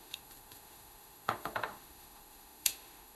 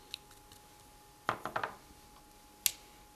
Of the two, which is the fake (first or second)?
first